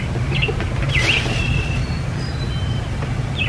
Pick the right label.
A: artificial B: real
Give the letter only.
B